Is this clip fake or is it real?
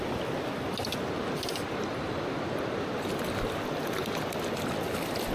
real